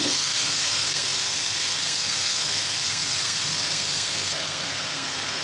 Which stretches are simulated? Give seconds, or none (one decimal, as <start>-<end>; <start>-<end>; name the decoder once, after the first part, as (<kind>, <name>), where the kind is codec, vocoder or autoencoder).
0.0-5.4 (codec, SNAC)